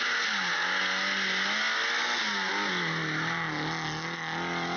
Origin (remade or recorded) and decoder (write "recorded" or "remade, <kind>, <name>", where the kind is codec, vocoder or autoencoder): recorded